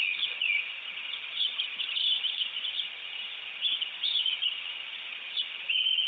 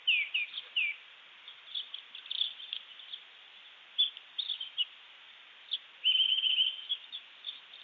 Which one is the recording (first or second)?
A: second